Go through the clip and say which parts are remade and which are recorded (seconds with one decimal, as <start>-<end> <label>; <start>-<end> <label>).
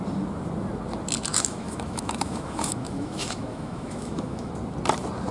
0.0-1.3 recorded; 1.3-4.5 remade; 4.5-5.3 recorded